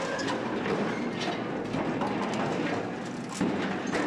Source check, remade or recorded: recorded